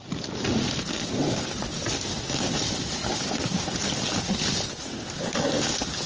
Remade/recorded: recorded